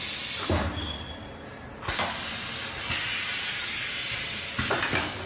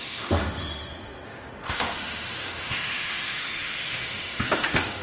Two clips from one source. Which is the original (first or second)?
first